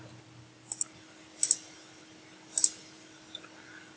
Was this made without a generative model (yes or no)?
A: yes